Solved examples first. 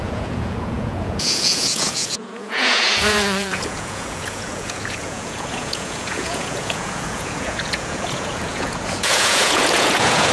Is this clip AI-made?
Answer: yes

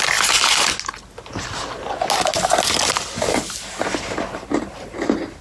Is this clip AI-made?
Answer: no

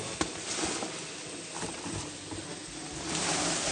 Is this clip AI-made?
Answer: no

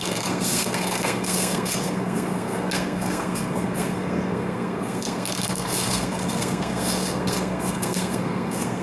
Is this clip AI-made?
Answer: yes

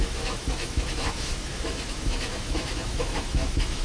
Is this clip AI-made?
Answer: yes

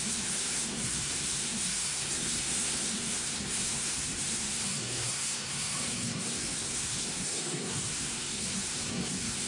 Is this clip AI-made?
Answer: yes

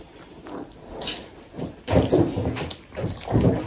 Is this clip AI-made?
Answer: no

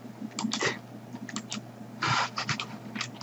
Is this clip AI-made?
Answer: no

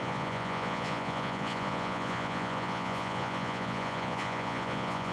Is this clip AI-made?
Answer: yes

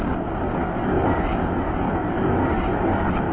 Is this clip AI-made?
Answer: no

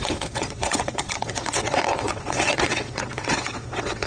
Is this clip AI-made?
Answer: yes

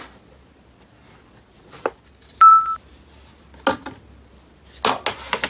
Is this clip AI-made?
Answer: no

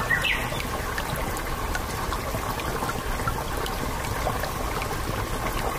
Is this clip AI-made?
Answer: no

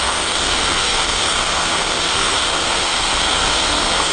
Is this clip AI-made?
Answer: yes